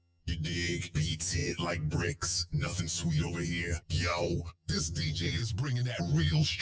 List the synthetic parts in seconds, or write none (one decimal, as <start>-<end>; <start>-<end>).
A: 0.0-5.4; 6.0-6.6